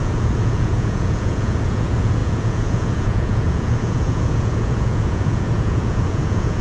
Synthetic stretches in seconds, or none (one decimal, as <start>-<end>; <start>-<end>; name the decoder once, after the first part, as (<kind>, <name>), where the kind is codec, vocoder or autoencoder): 0.0-6.6 (vocoder, Vocos)

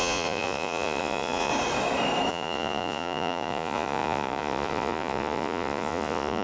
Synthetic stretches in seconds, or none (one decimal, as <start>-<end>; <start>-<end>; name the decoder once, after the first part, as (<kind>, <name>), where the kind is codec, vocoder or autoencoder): 0.0-1.5 (vocoder, Vocos); 2.3-6.4

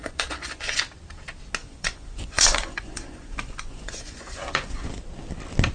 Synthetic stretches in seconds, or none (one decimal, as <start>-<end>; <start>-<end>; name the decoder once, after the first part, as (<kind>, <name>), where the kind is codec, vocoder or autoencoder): 0.0-0.8 (vocoder, Vocos); 1.6-5.0

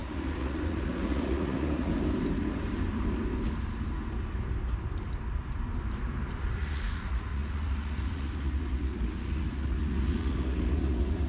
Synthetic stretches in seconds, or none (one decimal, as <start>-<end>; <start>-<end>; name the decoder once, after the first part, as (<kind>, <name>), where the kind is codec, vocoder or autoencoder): 0.0-1.9 (vocoder, Vocos); 6.6-11.3

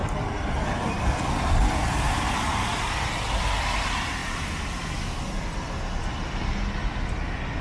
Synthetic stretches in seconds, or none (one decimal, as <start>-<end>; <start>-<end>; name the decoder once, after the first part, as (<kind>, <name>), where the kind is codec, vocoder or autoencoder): none

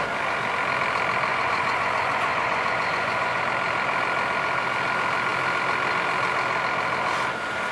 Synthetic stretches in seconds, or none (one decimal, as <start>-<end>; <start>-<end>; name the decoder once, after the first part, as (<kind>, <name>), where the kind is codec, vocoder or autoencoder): 1.3-3.4 (vocoder, Vocos)